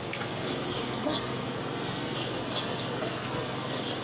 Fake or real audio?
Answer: fake